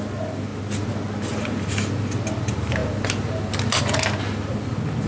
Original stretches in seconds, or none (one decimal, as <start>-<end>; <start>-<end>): 0.0-5.1